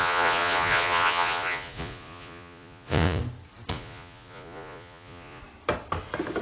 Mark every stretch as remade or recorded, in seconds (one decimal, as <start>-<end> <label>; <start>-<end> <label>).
0.0-3.2 remade; 3.2-3.7 recorded; 3.7-5.4 remade; 5.4-6.4 recorded